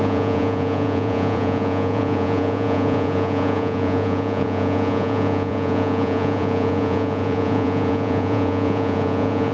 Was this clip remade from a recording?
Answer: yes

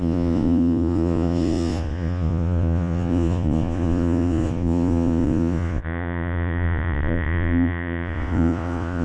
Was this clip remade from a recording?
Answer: yes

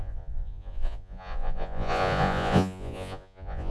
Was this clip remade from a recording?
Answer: yes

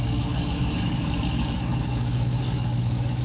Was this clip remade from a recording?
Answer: yes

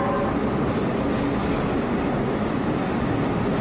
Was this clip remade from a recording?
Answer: no